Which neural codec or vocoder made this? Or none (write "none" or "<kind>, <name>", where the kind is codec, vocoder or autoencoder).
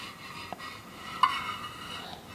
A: none